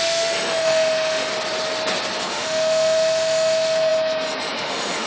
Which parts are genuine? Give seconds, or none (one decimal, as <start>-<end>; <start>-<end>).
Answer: 1.3-2.3